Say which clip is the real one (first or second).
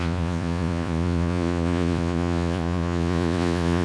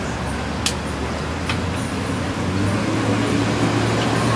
second